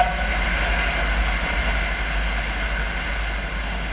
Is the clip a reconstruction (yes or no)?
no